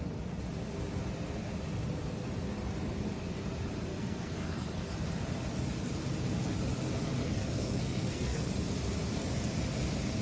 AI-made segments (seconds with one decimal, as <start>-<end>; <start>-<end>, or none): 3.9-4.8; 7.2-8.5